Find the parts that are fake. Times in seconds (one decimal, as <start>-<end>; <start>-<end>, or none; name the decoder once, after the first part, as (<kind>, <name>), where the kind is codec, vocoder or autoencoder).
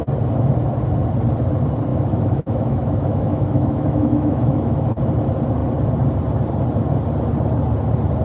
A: 1.9-5.0 (autoencoder, DAC-VAE)